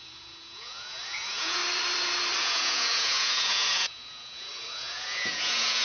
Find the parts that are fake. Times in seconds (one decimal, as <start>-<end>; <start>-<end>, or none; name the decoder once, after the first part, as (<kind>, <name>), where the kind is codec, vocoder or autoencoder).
0.0-1.6 (vocoder, Vocos); 2.4-5.8